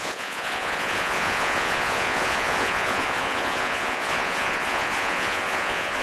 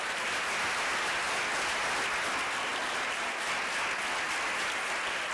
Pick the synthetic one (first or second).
first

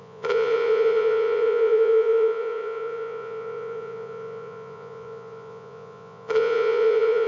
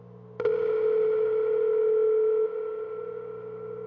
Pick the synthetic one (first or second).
first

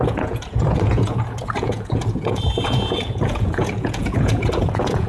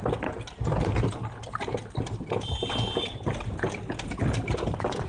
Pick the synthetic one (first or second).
first